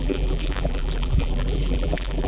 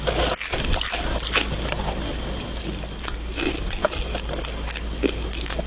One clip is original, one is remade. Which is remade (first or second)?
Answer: first